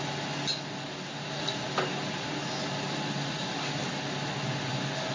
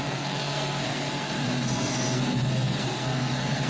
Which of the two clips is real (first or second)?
first